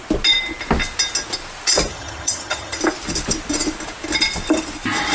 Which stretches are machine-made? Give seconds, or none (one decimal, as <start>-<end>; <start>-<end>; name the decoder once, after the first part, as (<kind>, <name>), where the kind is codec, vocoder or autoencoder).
1.9-2.8 (vocoder, HiFi-GAN)